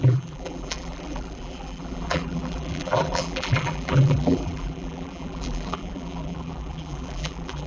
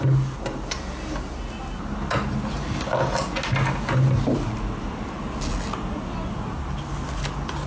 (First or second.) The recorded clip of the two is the second